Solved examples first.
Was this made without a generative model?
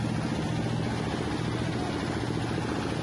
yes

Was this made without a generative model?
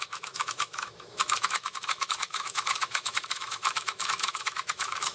no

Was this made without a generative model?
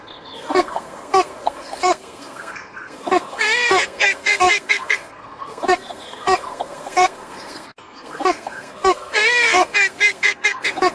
no